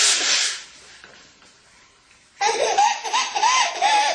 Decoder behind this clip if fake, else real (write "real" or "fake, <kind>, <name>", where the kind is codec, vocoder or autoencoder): fake, vocoder, BigVGAN v2